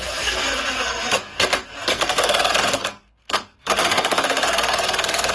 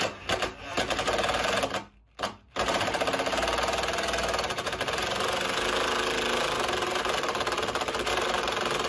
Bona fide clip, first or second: second